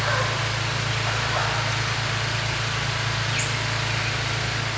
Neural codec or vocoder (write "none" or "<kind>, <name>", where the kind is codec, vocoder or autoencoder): none